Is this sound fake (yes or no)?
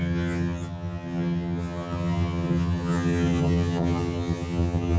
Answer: yes